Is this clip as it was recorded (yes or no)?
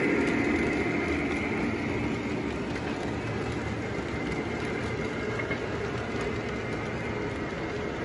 yes